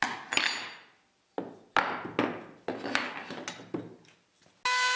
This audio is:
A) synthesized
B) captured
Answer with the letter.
B